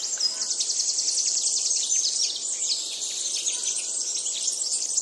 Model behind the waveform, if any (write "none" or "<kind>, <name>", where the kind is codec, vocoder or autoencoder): none